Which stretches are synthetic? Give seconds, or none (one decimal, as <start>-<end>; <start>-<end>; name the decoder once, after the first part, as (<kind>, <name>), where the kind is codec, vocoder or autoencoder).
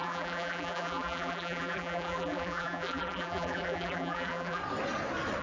0.0-4.6 (vocoder, BigVGAN v2)